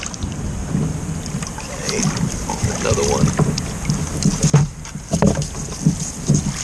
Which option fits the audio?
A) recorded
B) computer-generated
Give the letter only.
A